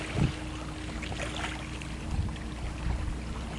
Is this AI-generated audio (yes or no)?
no